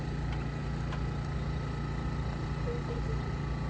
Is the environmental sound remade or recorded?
recorded